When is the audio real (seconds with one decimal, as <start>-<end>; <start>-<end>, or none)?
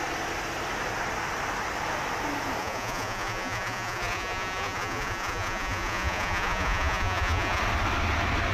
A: 0.0-2.6; 7.6-8.5